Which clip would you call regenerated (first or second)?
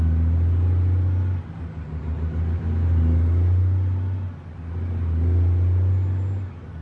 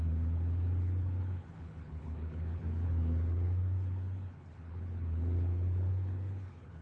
second